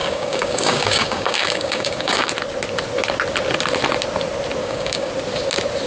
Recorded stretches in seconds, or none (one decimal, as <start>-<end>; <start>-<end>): 2.3-4.6; 5.1-5.9